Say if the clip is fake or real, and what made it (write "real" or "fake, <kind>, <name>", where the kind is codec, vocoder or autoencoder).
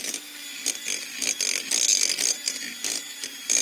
real